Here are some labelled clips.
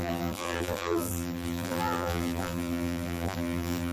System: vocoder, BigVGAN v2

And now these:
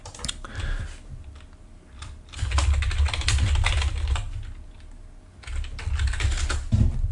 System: none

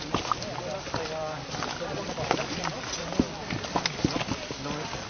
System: none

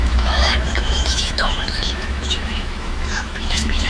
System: autoencoder, DAC-VAE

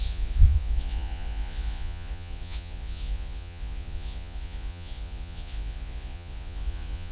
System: vocoder, Vocos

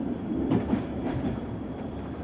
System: vocoder, BigVGAN v2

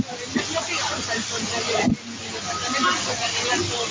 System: none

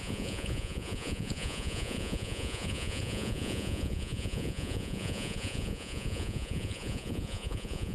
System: vocoder, Vocos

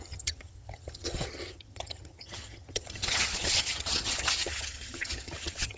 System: vocoder, HiFi-GAN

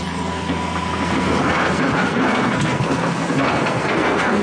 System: codec, SNAC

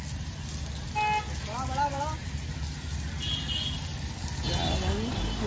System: none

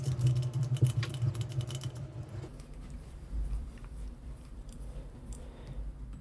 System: vocoder, BigVGAN v2